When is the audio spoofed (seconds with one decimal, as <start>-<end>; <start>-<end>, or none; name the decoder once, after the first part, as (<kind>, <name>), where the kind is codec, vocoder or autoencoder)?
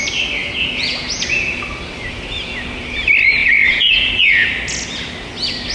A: 0.4-1.2 (vocoder, Vocos); 3.4-4.1